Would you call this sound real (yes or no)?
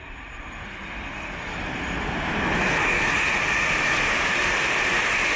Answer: yes